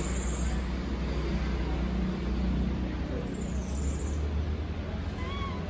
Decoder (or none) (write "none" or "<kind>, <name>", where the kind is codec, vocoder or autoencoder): none